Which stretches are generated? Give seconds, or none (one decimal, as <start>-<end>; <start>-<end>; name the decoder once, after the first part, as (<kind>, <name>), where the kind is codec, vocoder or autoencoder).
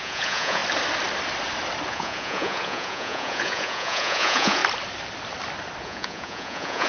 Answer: 0.0-0.6 (vocoder, Vocos); 1.9-4.6; 5.8-6.9